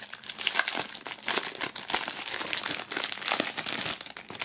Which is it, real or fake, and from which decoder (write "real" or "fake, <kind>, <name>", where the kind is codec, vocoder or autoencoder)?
real